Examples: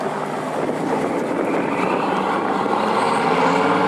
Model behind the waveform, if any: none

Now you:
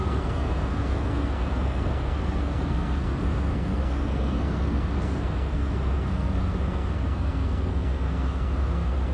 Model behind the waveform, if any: codec, SNAC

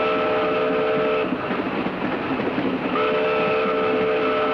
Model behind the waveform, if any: none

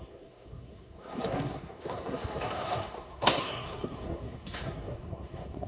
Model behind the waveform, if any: codec, SNAC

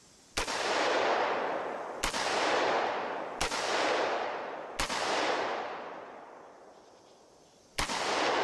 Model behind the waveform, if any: none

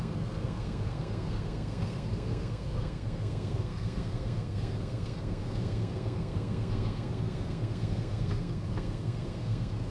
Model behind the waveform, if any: codec, SNAC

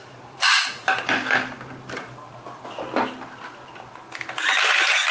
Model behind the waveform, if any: none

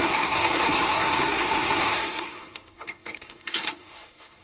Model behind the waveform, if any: codec, SNAC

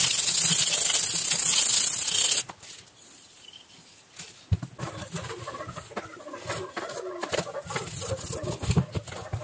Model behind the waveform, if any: none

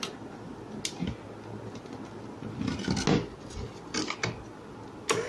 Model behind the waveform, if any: none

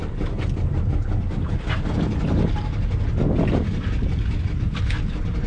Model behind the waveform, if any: none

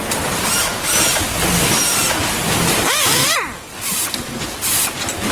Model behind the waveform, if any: none